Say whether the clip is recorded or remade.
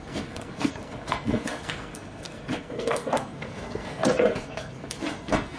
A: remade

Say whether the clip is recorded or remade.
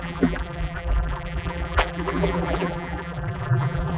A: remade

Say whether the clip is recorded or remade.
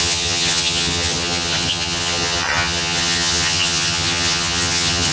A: remade